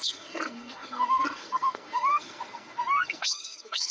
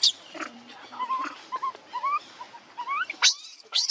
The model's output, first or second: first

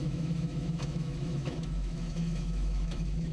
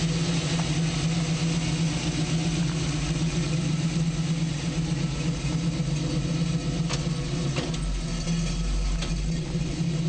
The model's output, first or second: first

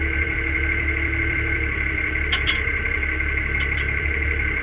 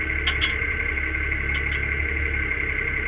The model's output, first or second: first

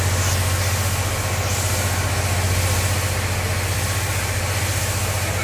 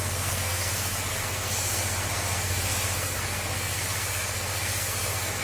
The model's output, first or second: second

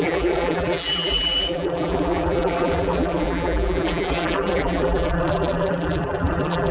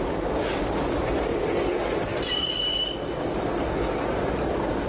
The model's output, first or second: first